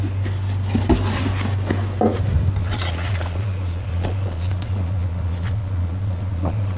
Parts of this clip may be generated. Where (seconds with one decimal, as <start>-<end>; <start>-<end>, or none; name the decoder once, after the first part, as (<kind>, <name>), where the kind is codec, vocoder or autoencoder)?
2.6-6.8 (vocoder, Vocos)